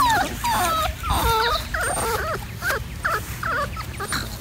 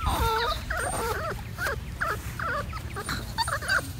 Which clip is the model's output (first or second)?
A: second